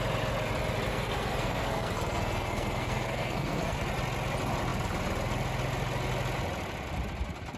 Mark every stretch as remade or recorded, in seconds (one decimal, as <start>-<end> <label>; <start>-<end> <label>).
0.0-0.9 recorded; 0.9-3.9 remade; 3.9-7.6 recorded